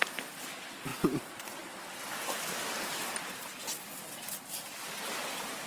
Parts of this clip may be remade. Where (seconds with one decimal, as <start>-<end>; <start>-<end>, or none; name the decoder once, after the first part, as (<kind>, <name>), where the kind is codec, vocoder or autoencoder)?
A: none